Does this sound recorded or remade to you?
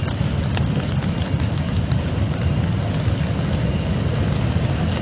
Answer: recorded